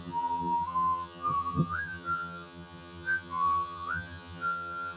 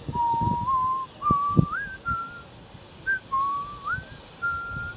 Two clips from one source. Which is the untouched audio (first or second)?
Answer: second